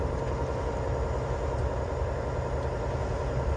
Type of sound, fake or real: real